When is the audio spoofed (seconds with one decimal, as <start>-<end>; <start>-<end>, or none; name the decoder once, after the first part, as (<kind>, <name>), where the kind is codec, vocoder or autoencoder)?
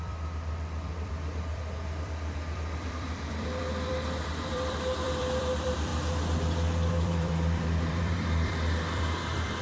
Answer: 0.0-5.9 (vocoder, BigVGAN v2); 6.9-9.6